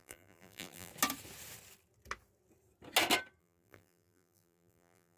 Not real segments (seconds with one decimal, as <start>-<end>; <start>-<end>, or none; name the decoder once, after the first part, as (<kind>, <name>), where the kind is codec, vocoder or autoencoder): 0.0-0.9 (vocoder, BigVGAN v2); 3.4-5.2